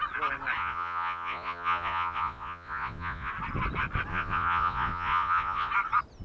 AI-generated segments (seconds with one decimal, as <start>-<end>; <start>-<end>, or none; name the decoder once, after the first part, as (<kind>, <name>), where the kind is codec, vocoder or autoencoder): 0.6-3.3 (vocoder, Vocos); 4.1-5.7